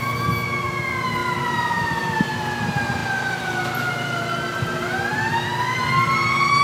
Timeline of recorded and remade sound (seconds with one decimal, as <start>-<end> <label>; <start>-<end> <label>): 0.0-1.2 recorded; 1.2-2.2 remade; 2.2-3.0 recorded; 3.0-3.9 remade; 3.9-5.1 recorded; 5.1-5.8 remade; 5.8-6.6 recorded